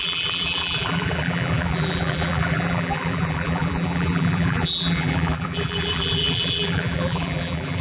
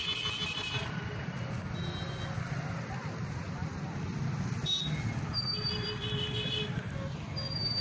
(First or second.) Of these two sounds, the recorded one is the second